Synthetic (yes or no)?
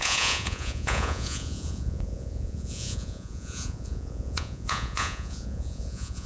yes